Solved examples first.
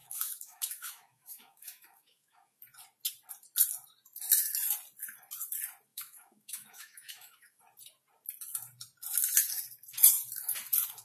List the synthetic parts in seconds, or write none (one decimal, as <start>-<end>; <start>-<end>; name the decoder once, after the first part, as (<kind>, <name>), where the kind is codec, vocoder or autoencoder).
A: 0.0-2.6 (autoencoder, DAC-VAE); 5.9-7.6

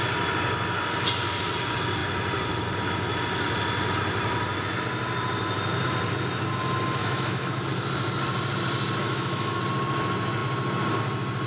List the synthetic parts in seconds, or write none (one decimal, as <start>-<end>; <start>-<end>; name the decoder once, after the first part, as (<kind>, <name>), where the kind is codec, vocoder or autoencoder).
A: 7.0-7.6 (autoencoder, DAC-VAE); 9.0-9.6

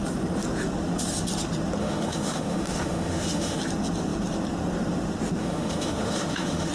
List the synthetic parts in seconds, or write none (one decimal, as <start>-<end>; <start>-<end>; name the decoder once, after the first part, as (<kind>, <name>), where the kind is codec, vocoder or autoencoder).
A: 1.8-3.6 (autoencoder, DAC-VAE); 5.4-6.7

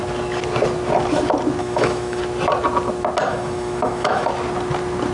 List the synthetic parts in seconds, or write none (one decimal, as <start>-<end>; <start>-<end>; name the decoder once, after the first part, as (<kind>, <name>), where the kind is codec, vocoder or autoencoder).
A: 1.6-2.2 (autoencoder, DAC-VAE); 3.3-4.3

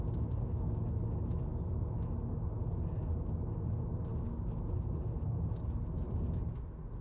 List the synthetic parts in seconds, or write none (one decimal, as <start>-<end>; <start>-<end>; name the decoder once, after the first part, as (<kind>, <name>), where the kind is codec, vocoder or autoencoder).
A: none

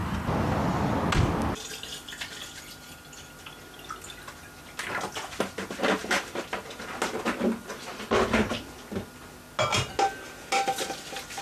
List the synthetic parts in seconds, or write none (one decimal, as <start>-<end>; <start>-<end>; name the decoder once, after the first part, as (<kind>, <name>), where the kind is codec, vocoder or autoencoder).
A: none

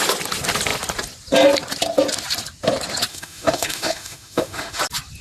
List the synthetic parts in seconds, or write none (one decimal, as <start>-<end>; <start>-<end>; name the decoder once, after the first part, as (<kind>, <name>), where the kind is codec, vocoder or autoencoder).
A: 3.1-4.8 (autoencoder, DAC-VAE)

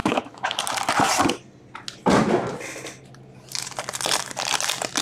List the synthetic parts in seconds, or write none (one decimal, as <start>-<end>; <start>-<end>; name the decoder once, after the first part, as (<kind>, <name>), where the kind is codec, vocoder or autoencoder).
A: 0.0-0.6 (autoencoder, DAC-VAE)